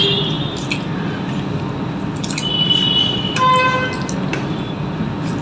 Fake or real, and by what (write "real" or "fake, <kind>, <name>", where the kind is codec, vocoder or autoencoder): real